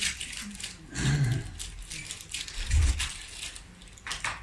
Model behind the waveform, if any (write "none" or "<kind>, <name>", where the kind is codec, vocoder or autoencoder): vocoder, BigVGAN v2